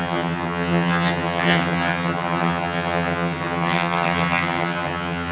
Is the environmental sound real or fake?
fake